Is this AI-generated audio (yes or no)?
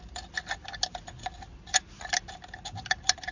no